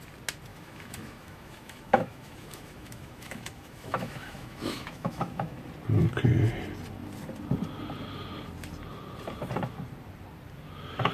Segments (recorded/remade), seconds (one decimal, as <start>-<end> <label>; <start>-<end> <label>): 0.0-0.5 recorded; 0.5-5.6 remade; 5.6-11.1 recorded